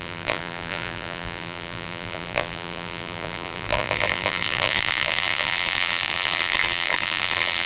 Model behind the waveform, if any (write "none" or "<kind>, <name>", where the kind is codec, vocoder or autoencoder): vocoder, BigVGAN v2